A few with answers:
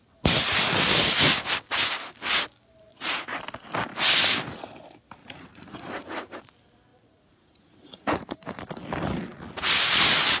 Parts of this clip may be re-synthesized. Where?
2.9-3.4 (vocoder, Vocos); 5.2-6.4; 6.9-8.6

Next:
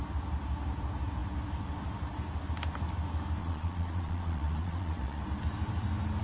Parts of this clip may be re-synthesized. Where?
3.4-5.2 (vocoder, Vocos)

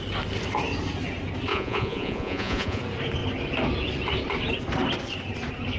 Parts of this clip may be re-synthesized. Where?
1.5-2.8 (vocoder, Vocos)

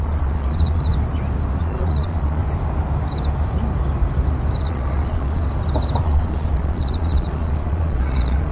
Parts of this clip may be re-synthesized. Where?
0.0-0.9 (vocoder, Vocos); 1.6-2.4; 4.6-5.4; 6.0-8.5